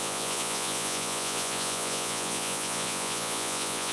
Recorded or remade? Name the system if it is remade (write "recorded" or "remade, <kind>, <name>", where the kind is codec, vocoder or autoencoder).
remade, vocoder, Vocos